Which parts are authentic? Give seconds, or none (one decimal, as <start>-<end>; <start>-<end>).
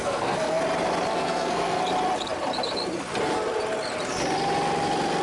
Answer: 0.6-1.1; 1.8-5.2